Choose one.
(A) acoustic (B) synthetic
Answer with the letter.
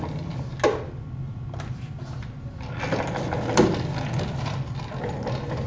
A